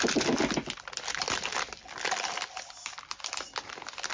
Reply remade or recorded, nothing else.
recorded